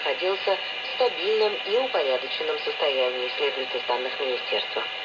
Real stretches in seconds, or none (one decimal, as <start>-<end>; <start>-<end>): 0.0-5.0

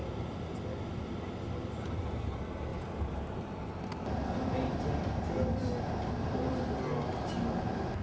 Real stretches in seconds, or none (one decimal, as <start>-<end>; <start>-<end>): 0.0-2.7; 3.4-8.0

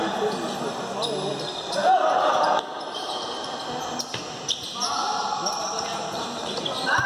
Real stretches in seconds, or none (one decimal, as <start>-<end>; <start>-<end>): 0.0-1.8; 3.1-7.1

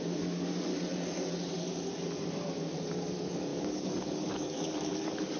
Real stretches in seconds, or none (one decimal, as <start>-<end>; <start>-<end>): 0.7-3.0